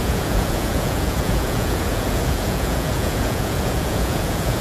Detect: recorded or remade remade